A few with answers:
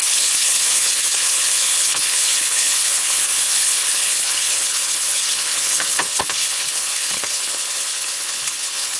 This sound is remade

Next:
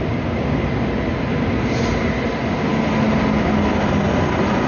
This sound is recorded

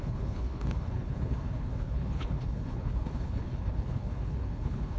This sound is remade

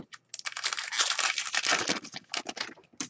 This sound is recorded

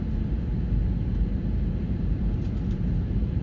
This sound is recorded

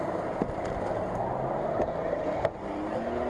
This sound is recorded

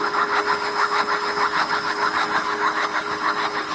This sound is remade